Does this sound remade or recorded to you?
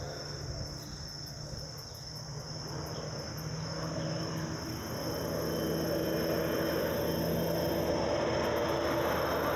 recorded